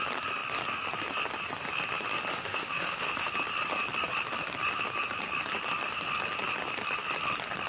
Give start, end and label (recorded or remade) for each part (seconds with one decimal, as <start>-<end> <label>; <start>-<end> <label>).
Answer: 0.0-2.3 recorded; 2.3-3.3 remade; 3.3-7.7 recorded